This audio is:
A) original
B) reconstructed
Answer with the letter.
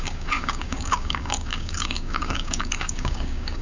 B